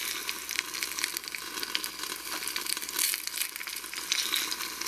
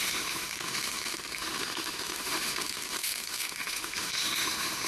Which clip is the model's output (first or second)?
second